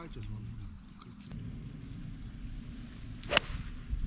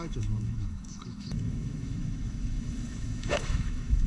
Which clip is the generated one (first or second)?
second